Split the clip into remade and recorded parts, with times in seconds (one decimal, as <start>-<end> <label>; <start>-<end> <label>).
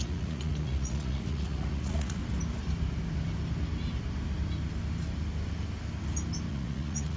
0.0-2.2 remade; 2.2-6.5 recorded; 6.5-7.2 remade